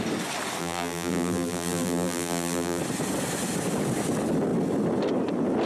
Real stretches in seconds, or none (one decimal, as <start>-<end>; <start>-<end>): 0.0-0.6; 2.8-5.7